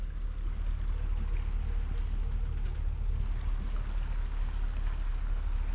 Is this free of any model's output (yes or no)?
yes